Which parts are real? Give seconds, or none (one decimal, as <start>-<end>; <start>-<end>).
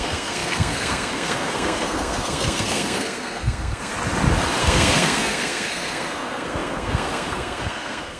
3.9-4.6